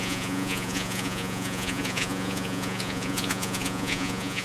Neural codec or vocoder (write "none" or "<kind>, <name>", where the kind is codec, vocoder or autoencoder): vocoder, Vocos